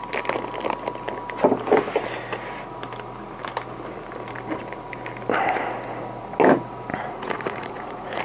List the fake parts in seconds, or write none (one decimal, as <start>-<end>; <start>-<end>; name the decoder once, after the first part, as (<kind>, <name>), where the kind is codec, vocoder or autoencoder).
6.9-8.2 (vocoder, Vocos)